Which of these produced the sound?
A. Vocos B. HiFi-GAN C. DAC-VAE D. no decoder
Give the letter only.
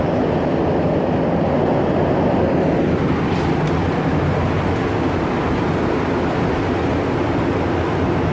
D